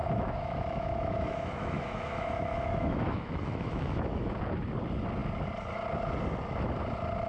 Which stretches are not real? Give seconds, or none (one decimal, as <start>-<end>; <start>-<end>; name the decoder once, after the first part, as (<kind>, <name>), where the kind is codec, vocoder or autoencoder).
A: 0.0-4.4 (autoencoder, DAC-VAE)